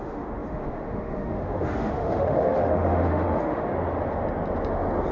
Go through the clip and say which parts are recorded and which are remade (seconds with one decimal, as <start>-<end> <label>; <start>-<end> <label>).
0.0-3.7 remade; 3.7-5.1 recorded